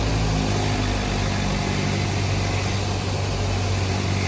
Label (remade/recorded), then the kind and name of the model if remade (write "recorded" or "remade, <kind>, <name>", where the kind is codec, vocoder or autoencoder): recorded